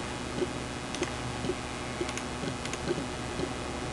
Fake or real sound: real